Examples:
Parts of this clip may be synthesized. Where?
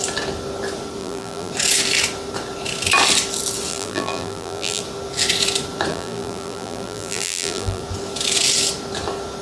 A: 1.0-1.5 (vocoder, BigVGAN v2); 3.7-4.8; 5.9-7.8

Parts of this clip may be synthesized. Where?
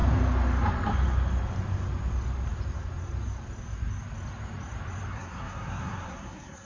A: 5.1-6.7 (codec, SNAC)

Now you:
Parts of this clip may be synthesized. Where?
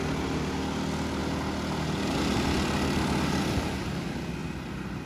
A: none